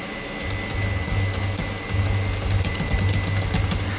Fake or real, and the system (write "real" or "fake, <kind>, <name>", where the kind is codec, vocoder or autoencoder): real